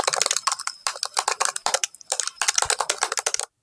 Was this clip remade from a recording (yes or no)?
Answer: no